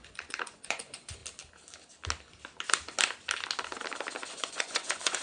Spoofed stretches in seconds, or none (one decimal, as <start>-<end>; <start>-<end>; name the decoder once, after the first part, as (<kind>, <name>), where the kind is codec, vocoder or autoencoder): 0.0-1.2 (vocoder, Vocos); 4.3-5.2